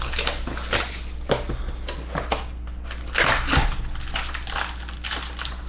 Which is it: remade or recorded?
recorded